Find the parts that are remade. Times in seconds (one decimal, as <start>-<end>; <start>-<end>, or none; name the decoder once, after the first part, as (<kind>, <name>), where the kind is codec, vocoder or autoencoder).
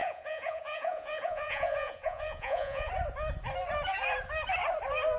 0.0-2.9 (vocoder, Vocos)